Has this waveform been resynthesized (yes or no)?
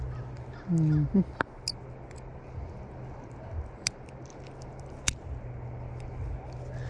no